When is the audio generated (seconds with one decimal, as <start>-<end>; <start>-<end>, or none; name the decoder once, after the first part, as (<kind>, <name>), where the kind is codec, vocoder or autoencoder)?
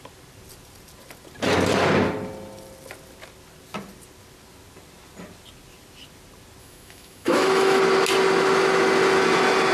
6.6-7.8 (autoencoder, DAC-VAE)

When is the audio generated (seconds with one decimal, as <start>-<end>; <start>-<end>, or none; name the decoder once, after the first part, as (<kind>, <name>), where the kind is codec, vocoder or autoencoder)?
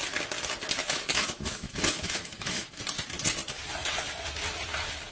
0.8-2.8 (autoencoder, DAC-VAE)